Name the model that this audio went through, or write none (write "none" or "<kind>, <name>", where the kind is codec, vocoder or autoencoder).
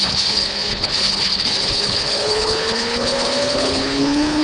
codec, HILCodec